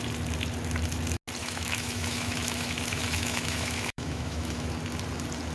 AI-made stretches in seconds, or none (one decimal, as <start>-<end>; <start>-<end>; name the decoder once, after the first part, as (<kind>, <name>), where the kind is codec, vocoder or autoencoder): 1.4-4.7 (autoencoder, DAC-VAE)